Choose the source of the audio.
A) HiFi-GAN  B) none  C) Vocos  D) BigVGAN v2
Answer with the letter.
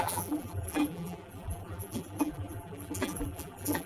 D